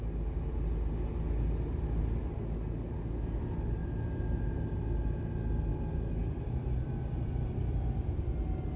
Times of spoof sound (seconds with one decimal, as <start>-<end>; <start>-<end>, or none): 3.8-4.7; 5.7-8.2